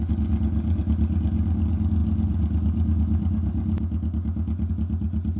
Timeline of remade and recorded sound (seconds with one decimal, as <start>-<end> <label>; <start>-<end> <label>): 0.0-5.4 recorded